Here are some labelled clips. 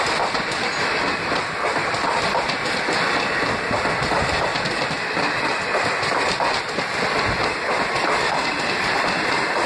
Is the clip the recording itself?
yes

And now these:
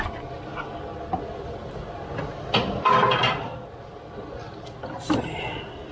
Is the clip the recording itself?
yes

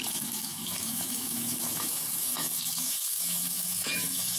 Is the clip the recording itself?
no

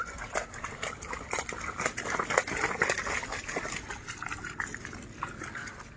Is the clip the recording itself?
yes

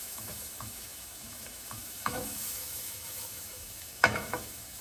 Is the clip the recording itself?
no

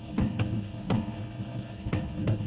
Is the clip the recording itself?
no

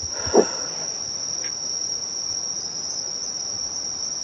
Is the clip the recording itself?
yes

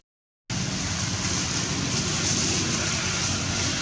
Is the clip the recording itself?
yes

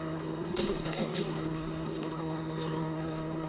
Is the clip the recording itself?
no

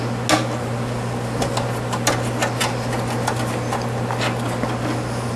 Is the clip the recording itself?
yes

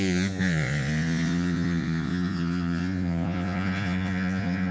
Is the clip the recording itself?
no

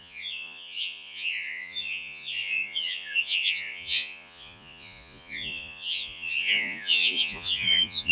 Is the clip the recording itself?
no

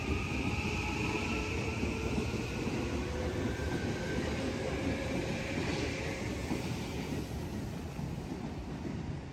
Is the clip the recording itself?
yes